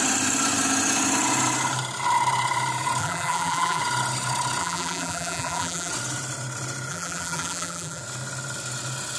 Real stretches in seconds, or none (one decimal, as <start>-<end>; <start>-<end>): 0.0-3.0; 3.8-4.6; 5.9-6.9; 8.0-9.2